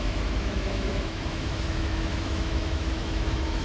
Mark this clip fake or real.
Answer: fake